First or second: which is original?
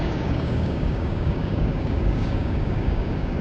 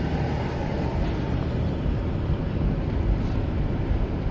second